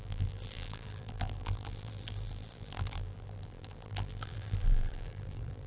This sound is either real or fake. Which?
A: fake